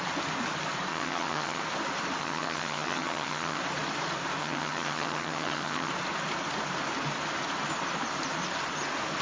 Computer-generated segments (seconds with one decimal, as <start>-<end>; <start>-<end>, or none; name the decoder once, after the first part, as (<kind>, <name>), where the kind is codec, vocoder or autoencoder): 0.9-1.6 (vocoder, HiFi-GAN); 2.2-3.6; 4.4-5.9